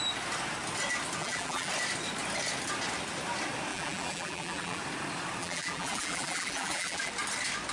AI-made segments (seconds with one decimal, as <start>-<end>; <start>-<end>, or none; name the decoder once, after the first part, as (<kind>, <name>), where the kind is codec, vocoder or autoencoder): 1.2-1.7 (vocoder, BigVGAN v2); 3.7-4.8; 5.4-7.1